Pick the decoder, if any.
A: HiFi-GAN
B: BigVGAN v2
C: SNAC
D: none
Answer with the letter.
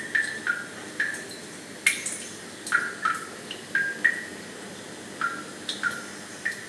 D